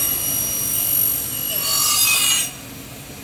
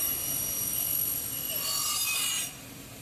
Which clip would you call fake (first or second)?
second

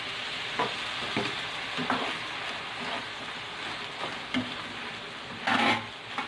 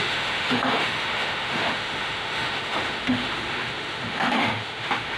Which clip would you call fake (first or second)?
second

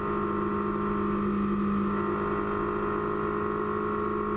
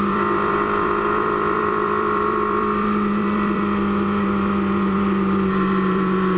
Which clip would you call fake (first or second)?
second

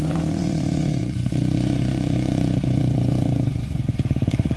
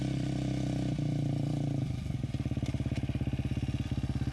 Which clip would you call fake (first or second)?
first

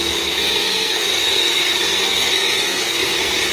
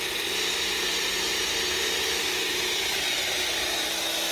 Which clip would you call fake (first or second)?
first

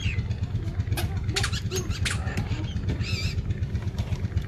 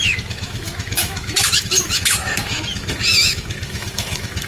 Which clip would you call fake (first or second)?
second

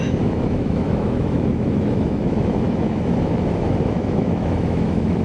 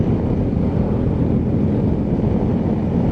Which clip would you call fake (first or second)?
first